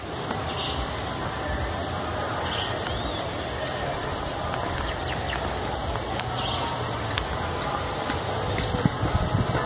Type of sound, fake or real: real